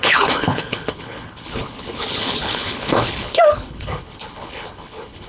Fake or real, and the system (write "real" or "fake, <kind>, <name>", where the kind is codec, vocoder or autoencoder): fake, codec, HILCodec